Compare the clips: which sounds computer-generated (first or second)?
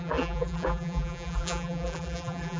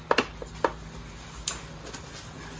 first